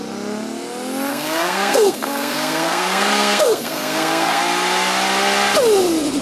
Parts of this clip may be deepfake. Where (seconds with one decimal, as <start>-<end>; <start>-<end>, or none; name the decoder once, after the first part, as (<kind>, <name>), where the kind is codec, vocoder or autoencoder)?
1.1-4.4 (codec, SNAC)